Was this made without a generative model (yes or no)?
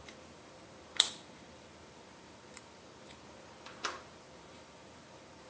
no